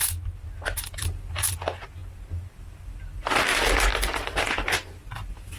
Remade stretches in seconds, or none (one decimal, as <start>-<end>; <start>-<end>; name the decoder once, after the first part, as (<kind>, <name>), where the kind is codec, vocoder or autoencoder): none